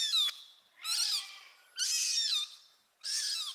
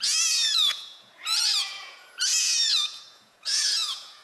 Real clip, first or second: first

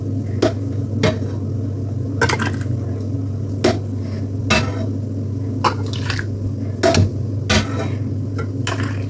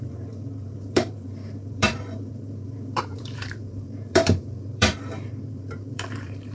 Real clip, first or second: first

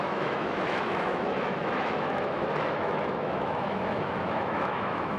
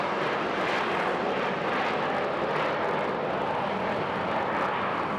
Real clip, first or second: second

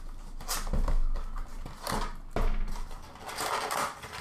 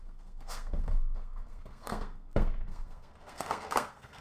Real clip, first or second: first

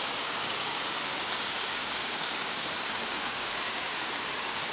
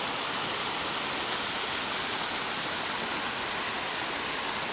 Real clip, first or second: second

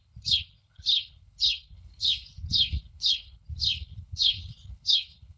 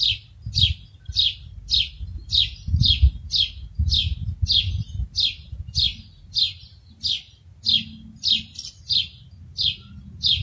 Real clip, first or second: second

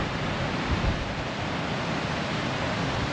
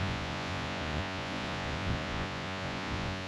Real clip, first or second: first